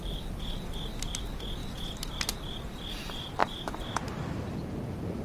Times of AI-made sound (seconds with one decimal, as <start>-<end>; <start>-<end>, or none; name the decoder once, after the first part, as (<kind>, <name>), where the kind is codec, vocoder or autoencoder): none